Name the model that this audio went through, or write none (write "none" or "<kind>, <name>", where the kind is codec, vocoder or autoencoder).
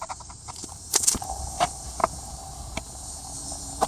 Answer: vocoder, BigVGAN v2